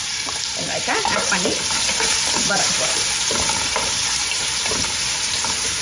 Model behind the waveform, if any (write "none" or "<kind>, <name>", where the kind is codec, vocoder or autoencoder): vocoder, BigVGAN v2